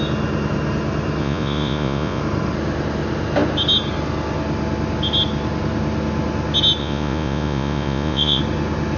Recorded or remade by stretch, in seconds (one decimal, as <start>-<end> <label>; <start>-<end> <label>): 0.0-1.2 recorded; 1.2-2.2 remade; 2.2-6.8 recorded; 6.8-8.4 remade; 8.4-9.0 recorded